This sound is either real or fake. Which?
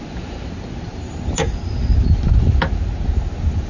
real